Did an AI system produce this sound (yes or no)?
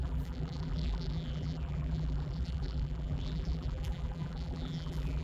yes